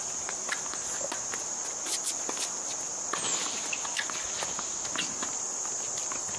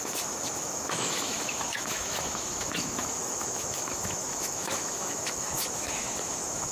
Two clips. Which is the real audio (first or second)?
first